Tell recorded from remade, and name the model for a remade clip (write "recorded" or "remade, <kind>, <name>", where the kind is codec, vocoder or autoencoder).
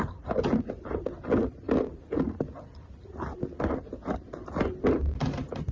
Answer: recorded